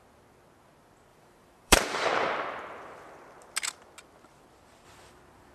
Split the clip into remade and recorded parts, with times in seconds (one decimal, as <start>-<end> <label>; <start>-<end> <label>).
0.0-1.1 recorded; 1.1-2.1 remade; 2.1-5.5 recorded